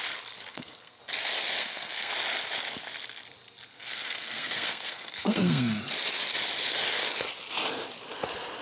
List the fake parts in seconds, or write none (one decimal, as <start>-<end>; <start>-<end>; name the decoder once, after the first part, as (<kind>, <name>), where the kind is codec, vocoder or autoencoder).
0.5-1.0 (codec, SNAC); 1.6-2.1; 3.7-5.8